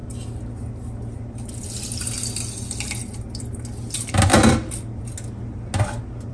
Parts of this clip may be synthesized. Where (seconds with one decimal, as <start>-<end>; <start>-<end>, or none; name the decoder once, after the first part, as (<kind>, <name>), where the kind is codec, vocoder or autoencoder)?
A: none